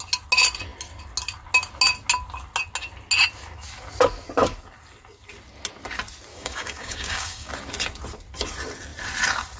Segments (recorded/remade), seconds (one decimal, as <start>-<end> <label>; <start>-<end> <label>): 0.0-6.3 recorded; 6.3-7.5 remade; 7.5-9.6 recorded